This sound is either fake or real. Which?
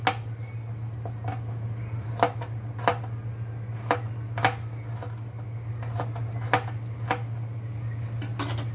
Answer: real